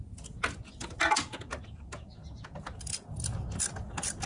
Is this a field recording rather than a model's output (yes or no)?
yes